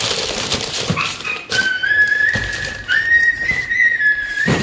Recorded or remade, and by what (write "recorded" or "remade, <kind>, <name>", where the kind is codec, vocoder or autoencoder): remade, vocoder, BigVGAN v2